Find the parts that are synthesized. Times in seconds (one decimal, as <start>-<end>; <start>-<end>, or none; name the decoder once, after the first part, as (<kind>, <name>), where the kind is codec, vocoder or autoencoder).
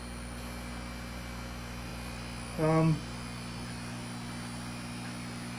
none